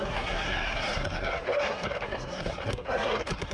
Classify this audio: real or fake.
fake